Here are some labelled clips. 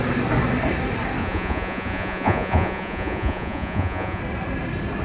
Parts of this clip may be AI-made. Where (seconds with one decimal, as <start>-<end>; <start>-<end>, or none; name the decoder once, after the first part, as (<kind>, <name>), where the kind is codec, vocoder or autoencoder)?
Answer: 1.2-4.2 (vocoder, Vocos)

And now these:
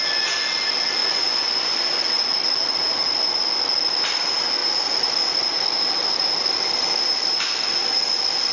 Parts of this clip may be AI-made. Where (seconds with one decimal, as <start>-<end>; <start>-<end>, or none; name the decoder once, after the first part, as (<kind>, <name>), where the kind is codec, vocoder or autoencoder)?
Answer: 1.0-1.8 (vocoder, Vocos)

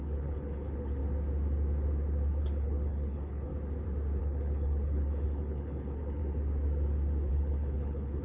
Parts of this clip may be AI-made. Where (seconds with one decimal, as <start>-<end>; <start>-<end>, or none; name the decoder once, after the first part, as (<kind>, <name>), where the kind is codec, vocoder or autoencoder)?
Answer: 0.0-1.0 (codec, HILCodec); 2.4-3.5; 4.2-6.2; 7.3-8.2

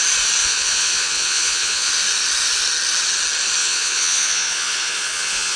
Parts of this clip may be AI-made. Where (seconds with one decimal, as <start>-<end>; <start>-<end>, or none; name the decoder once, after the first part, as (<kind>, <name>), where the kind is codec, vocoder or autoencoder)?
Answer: 0.4-1.9 (vocoder, Vocos); 3.6-5.6

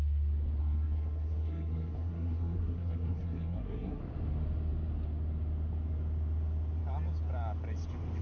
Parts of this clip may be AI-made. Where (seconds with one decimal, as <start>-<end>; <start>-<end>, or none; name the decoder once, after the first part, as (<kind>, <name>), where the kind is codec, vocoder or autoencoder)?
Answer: 0.6-4.0 (codec, SNAC)

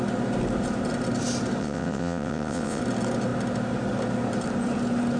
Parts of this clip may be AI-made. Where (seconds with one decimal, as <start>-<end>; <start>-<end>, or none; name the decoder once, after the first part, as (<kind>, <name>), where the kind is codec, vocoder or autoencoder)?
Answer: 1.6-2.8 (vocoder, WaveNeXt)

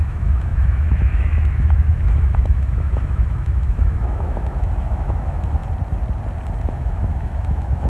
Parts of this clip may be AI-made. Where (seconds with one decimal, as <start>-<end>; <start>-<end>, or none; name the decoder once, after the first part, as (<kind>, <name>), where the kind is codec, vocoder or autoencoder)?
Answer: 0.0-5.6 (autoencoder, DAC-VAE); 6.6-7.9